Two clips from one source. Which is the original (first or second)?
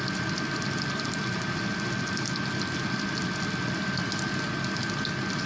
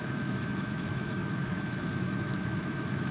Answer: first